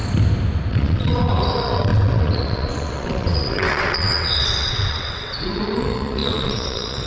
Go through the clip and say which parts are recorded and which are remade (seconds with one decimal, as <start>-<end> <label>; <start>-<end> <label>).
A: 0.0-0.7 recorded; 0.7-7.1 remade